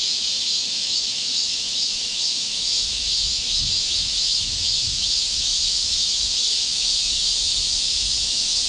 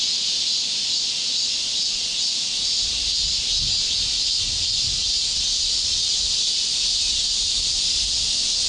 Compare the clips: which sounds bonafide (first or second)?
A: second